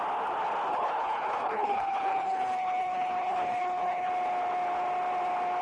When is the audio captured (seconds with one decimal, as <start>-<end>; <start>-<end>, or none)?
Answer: 0.0-0.7; 4.1-5.6